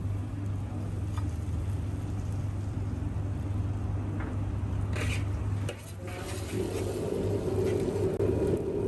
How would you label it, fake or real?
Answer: real